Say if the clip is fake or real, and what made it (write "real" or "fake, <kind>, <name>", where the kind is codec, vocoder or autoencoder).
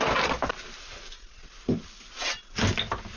real